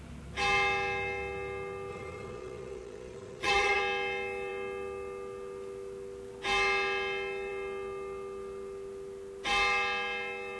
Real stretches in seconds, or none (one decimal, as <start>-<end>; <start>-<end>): 0.0-1.9; 3.8-10.6